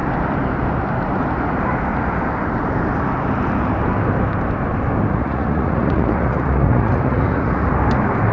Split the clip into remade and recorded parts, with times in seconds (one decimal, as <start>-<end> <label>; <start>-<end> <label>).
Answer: 0.0-5.1 recorded; 5.1-7.7 remade; 7.7-8.3 recorded